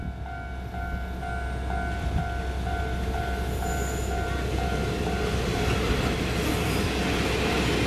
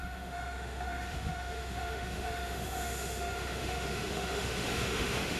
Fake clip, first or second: second